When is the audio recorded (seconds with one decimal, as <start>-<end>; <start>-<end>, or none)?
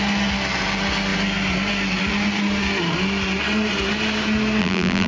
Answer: 0.0-4.6